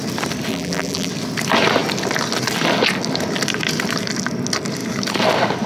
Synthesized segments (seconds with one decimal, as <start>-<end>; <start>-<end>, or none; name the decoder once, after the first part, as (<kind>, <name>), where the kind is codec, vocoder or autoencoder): 0.5-1.1 (vocoder, BigVGAN v2)